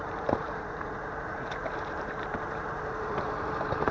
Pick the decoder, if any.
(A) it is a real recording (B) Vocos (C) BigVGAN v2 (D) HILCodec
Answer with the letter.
C